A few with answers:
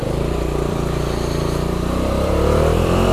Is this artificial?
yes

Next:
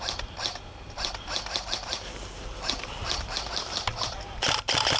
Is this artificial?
yes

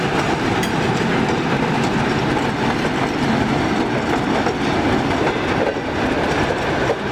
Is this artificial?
no